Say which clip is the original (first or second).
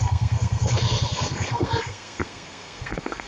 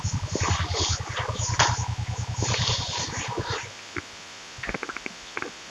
second